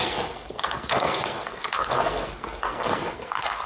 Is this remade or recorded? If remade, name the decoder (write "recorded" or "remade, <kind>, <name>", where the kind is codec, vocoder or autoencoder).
remade, codec, SNAC